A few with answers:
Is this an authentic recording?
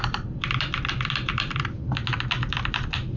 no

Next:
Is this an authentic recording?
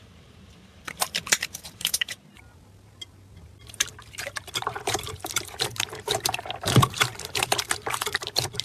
no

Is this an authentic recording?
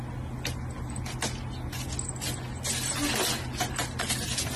yes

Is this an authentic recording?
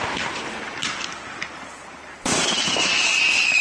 no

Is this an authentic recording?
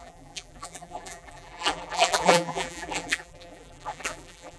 no